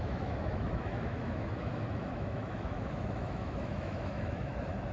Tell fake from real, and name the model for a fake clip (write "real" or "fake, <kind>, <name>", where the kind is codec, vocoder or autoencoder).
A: fake, autoencoder, DAC-VAE